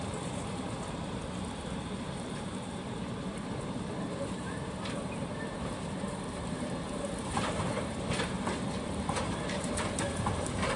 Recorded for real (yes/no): no